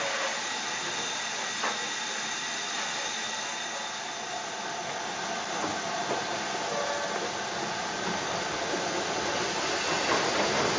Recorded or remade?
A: recorded